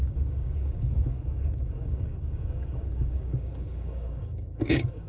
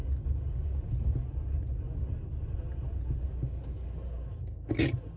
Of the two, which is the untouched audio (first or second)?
second